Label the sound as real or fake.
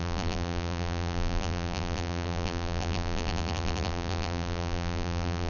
fake